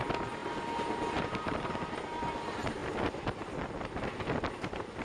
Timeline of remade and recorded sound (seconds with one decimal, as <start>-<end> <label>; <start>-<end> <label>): 0.0-0.4 recorded; 0.4-2.3 remade; 2.3-5.0 recorded